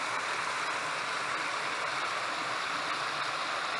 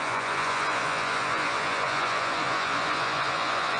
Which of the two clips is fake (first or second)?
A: second